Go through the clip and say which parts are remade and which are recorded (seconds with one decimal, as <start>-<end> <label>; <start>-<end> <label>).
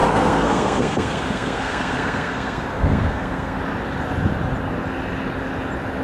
0.0-3.6 remade; 3.6-6.0 recorded